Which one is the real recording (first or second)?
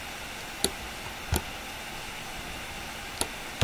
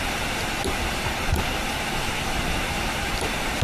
first